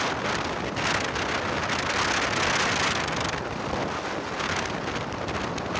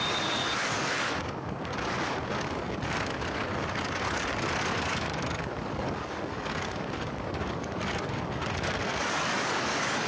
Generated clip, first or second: second